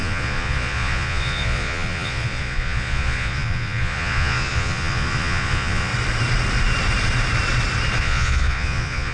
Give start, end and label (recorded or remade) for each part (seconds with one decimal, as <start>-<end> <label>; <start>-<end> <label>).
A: 0.0-5.9 remade; 5.9-8.0 recorded; 8.0-9.1 remade